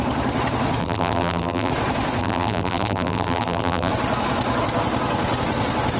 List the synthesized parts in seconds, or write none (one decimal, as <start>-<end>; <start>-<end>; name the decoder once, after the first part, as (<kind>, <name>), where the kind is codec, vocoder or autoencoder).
0.8-1.7 (vocoder, BigVGAN v2); 2.2-3.9